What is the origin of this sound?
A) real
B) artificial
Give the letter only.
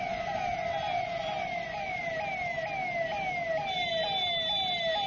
A